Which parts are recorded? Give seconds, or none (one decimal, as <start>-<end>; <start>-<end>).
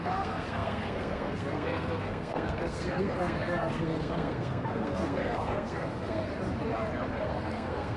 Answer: 6.3-7.1